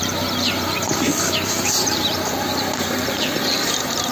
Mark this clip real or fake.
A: fake